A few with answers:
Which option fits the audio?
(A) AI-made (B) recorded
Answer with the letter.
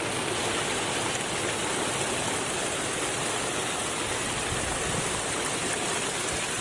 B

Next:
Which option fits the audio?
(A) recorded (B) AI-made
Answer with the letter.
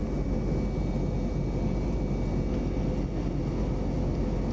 A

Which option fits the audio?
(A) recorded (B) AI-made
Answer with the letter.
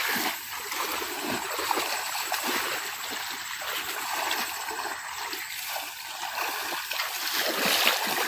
B